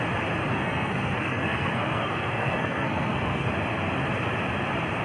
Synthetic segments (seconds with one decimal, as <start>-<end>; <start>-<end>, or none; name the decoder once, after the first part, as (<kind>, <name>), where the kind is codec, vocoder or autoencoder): 0.5-3.5 (codec, SNAC)